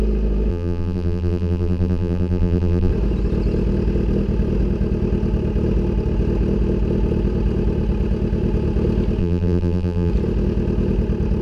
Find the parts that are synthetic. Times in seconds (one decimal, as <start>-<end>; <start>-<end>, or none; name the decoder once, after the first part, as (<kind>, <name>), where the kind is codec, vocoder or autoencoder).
0.5-2.9 (vocoder, BigVGAN v2); 9.2-10.1